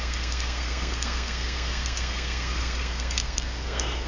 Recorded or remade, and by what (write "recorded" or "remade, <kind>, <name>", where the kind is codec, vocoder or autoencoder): remade, codec, SNAC